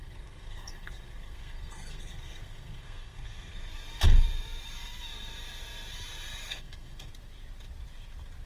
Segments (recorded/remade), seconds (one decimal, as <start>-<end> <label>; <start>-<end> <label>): 0.0-3.5 remade; 3.5-6.5 recorded; 6.5-7.1 remade; 7.1-8.5 recorded